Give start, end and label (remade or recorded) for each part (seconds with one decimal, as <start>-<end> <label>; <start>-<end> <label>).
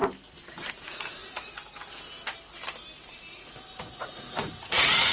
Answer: 0.0-0.7 recorded; 0.7-1.2 remade; 1.2-3.9 recorded; 3.9-5.1 remade